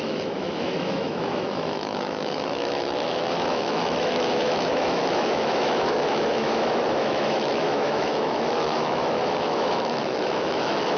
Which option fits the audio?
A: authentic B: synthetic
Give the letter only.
B